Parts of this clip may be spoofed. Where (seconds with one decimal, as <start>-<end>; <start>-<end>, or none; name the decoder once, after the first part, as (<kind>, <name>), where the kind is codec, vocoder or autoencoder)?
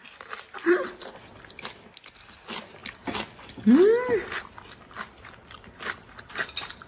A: none